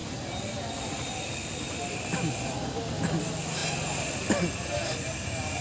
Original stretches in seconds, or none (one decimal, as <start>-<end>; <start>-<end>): 0.0-5.6